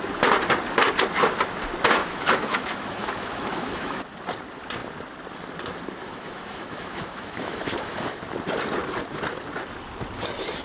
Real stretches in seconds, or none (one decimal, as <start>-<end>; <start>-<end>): 0.0-2.0; 4.0-6.0; 8.2-10.6